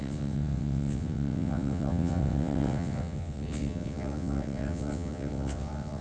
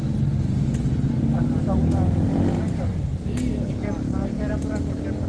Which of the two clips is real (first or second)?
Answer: second